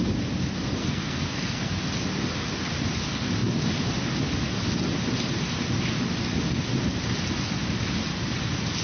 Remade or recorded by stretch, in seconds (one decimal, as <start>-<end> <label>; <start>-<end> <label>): 0.0-0.8 recorded; 0.8-1.7 remade; 1.7-8.8 recorded